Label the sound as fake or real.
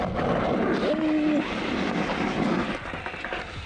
real